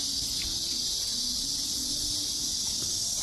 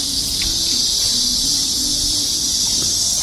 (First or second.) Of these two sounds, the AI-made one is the second